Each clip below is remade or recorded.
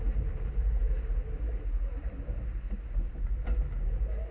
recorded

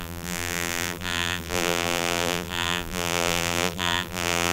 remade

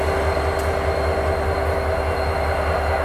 recorded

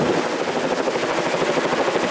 recorded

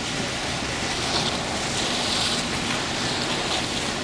recorded